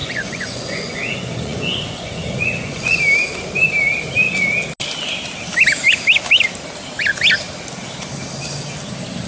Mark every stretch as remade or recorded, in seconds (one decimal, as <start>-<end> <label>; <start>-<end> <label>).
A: 0.0-3.0 remade; 3.0-9.3 recorded